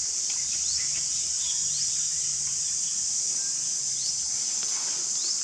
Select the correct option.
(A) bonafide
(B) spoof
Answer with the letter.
A